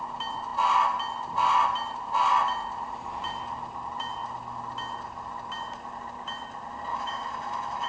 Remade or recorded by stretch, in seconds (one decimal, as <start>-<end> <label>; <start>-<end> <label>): 0.0-6.9 recorded; 6.9-7.9 remade